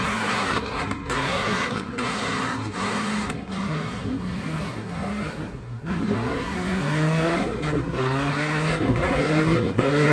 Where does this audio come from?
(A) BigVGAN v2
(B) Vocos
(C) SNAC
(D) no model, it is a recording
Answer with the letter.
C